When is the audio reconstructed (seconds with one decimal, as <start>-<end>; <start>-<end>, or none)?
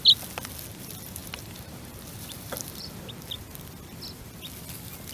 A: 1.2-3.1